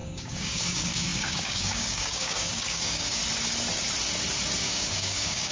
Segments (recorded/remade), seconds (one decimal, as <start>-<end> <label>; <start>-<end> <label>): 0.0-3.2 remade; 3.2-4.6 recorded; 4.6-5.5 remade